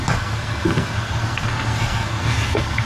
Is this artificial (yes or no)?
yes